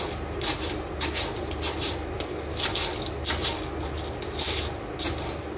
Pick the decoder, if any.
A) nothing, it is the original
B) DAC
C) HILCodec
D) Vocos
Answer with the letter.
A